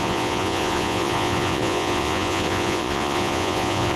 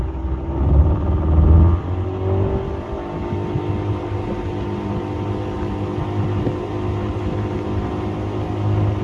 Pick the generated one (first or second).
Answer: first